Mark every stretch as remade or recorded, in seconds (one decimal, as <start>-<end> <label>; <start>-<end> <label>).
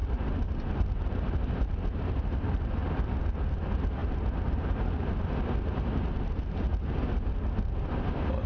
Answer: 0.0-8.5 recorded